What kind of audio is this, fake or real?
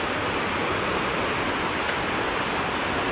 real